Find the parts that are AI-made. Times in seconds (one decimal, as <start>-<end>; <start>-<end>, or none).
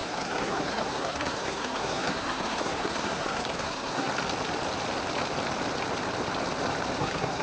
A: 0.0-4.1; 7.0-7.4